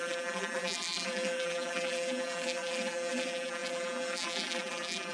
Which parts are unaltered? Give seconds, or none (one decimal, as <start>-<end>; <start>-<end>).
none